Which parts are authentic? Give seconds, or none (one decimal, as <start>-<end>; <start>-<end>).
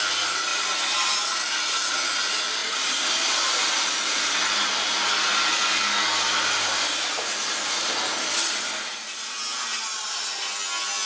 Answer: 0.0-2.6; 3.9-11.1